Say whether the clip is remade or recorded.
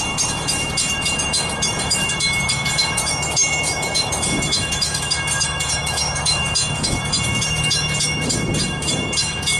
remade